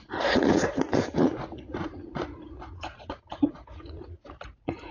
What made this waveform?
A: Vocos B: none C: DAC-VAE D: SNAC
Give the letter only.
A